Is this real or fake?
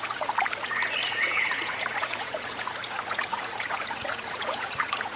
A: fake